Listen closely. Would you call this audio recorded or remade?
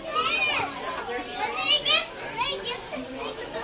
recorded